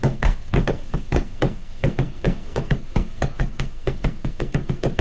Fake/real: fake